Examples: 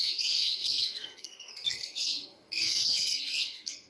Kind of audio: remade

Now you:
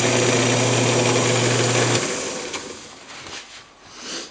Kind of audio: recorded